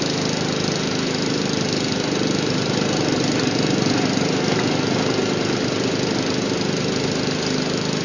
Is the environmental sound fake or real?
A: real